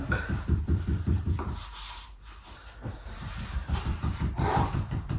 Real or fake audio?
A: fake